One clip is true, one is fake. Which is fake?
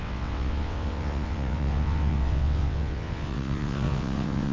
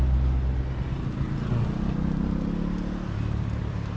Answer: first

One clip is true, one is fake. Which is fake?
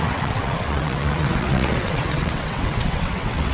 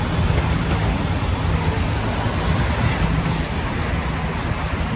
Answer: first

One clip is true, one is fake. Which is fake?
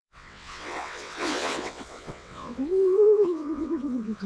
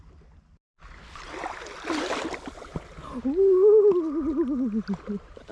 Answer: first